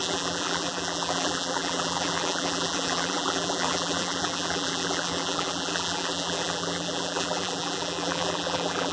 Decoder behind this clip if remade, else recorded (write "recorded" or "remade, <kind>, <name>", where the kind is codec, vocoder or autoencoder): remade, vocoder, BigVGAN v2